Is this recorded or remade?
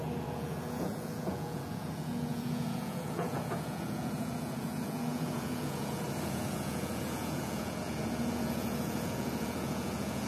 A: remade